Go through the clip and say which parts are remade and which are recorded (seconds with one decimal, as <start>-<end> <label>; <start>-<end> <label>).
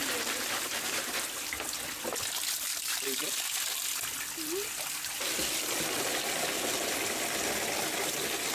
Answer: 0.0-1.1 remade; 1.1-2.7 recorded; 2.7-3.2 remade; 3.2-8.5 recorded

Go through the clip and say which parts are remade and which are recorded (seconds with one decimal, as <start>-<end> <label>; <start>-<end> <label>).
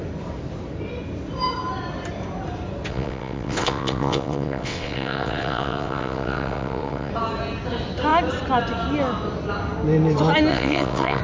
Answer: 0.0-2.9 recorded; 2.9-7.1 remade; 7.1-10.5 recorded; 10.5-11.2 remade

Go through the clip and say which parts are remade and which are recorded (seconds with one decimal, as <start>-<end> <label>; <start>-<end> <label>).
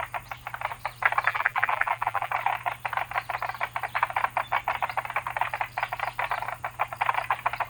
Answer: 0.0-1.3 recorded; 1.3-2.3 remade; 2.3-7.7 recorded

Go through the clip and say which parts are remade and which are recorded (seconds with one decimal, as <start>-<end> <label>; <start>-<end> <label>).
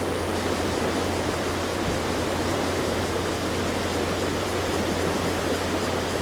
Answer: 0.0-1.7 recorded; 1.7-2.6 remade; 2.6-3.9 recorded; 3.9-4.6 remade; 4.6-6.2 recorded